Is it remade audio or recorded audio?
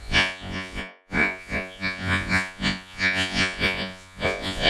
remade